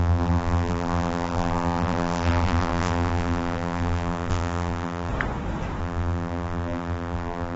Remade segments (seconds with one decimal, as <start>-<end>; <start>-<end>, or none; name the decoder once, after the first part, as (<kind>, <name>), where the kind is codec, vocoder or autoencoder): 0.0-5.1 (vocoder, BigVGAN v2); 5.8-7.6